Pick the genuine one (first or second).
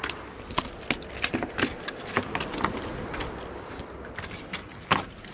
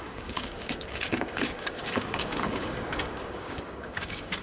first